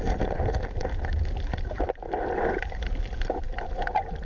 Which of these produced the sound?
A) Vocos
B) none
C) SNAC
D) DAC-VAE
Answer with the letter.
B